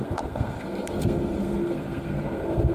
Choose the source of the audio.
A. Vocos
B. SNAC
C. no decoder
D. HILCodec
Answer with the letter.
B